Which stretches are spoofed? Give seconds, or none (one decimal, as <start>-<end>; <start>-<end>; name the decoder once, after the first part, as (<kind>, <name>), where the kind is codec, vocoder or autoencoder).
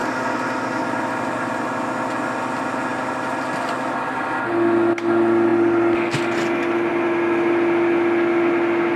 none